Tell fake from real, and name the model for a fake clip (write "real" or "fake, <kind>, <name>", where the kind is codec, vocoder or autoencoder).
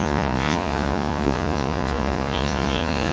fake, vocoder, Vocos